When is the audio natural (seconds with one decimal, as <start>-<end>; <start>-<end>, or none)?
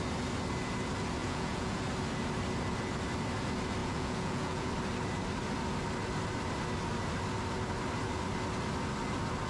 0.0-1.2; 1.8-3.8; 4.7-9.5